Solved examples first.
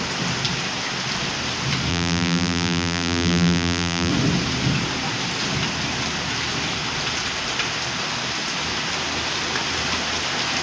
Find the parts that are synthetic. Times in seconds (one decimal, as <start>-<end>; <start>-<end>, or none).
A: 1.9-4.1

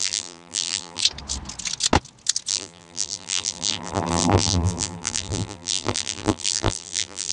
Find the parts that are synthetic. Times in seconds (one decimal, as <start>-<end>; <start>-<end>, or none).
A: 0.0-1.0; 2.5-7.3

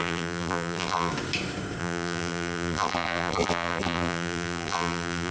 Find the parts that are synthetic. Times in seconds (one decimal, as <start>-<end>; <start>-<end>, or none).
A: 0.0-1.1; 1.8-5.3

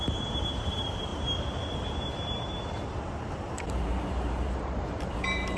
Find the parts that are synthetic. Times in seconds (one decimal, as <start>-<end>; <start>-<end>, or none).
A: 0.0-5.6